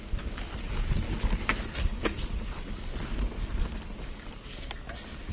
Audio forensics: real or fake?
real